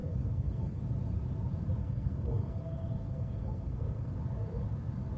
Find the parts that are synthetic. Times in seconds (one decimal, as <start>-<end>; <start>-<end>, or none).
0.0-0.8; 1.8-4.1